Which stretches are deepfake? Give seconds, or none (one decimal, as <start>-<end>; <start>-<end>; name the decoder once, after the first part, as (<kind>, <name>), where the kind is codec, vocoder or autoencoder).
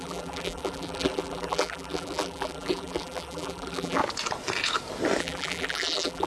0.0-4.0 (vocoder, BigVGAN v2); 5.2-6.3